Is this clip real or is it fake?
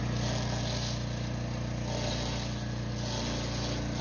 real